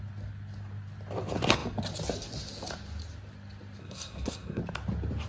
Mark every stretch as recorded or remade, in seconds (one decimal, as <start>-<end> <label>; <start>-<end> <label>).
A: 0.0-3.8 recorded; 3.8-4.6 remade; 4.6-5.3 recorded